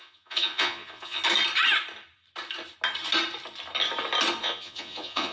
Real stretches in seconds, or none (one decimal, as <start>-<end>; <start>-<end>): 1.2-4.4